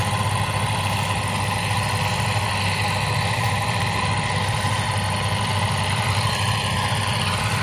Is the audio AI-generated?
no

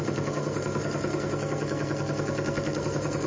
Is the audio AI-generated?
yes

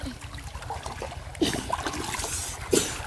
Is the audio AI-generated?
no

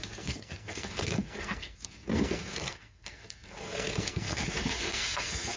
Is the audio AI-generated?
yes